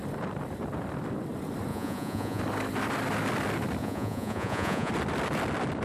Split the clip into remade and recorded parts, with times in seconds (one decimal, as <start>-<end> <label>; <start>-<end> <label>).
0.0-1.7 recorded; 1.7-2.4 remade; 2.4-3.8 recorded; 3.8-4.9 remade; 4.9-5.8 recorded